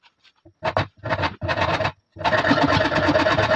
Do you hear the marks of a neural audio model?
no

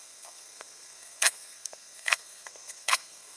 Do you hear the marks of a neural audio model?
yes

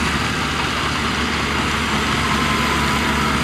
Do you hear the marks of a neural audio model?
no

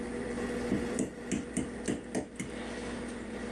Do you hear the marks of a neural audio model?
no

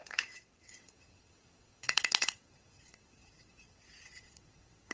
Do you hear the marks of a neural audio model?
yes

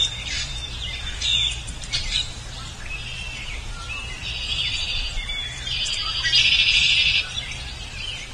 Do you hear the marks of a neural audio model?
yes